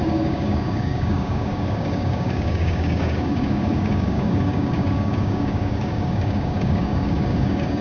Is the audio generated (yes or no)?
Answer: yes